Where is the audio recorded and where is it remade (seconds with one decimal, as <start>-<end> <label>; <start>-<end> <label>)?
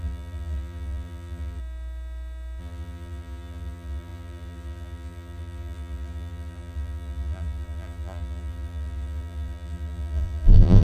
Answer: 0.0-1.6 remade; 1.6-2.6 recorded; 2.6-10.8 remade